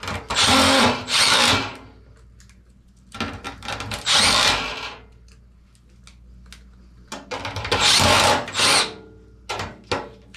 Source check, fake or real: real